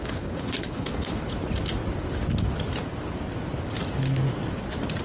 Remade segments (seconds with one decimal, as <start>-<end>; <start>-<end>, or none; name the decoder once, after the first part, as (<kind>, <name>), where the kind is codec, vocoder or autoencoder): 0.0-1.2 (codec, HILCodec)